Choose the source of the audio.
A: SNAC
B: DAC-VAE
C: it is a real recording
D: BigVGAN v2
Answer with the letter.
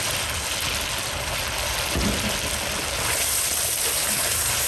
C